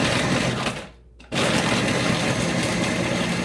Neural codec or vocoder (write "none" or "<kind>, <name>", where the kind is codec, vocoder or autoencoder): none